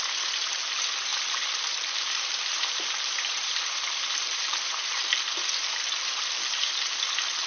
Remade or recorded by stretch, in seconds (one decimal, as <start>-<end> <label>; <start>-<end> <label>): 0.0-1.1 recorded; 1.1-5.2 remade; 5.2-7.5 recorded